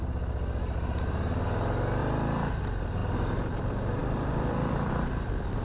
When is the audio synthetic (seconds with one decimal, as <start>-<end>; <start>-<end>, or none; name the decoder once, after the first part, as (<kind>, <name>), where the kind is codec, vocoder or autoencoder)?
2.0-2.6 (vocoder, BigVGAN v2); 4.0-4.9

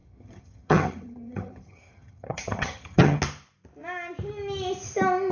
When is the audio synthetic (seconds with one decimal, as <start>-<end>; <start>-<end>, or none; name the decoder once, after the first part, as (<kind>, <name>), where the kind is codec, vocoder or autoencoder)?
0.0-3.2 (vocoder, HiFi-GAN)

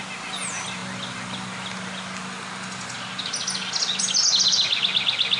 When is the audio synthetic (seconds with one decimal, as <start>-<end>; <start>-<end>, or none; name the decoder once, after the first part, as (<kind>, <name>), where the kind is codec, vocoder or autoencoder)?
none

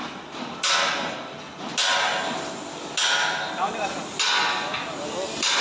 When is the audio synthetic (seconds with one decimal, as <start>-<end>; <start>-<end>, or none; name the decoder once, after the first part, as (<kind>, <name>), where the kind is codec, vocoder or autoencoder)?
none